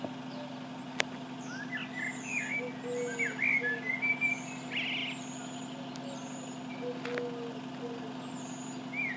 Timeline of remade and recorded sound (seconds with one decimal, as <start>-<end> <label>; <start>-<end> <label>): 0.0-9.2 recorded

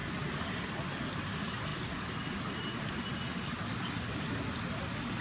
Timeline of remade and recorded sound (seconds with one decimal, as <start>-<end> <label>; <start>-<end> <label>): 0.0-0.7 remade; 0.7-1.7 recorded; 1.7-4.8 remade; 4.8-5.2 recorded

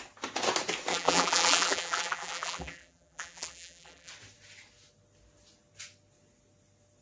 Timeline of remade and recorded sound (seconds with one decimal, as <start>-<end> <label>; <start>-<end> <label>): 0.0-0.9 recorded; 0.9-4.1 remade; 4.1-7.0 recorded